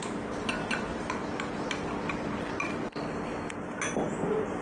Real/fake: real